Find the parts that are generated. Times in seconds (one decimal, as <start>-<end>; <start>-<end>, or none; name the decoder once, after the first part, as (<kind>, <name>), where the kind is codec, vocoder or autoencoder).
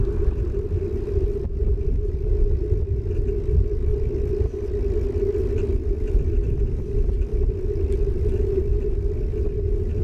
0.0-2.1 (vocoder, BigVGAN v2); 3.9-6.6; 7.3-8.6